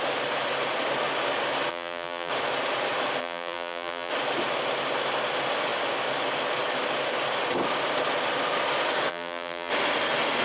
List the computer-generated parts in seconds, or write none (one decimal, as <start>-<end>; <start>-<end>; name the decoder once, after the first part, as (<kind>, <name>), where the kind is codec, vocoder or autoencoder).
1.7-2.3 (vocoder, BigVGAN v2); 3.2-4.1; 9.1-9.7